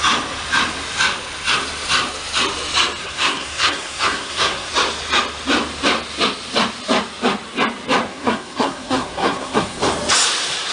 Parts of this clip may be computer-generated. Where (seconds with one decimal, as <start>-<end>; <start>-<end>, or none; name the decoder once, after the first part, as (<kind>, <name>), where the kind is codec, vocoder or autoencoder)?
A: 3.0-4.7 (codec, SNAC); 8.1-9.8